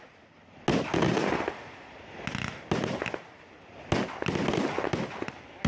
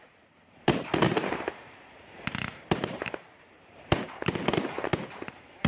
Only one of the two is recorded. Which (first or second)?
first